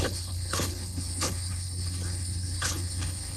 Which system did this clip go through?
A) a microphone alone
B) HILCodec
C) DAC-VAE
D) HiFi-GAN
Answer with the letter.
B